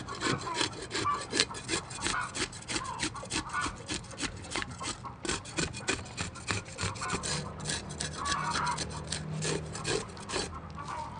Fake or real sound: real